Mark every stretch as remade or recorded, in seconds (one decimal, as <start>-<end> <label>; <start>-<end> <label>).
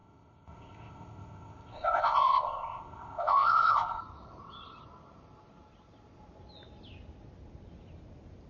0.0-4.0 remade; 4.0-8.5 recorded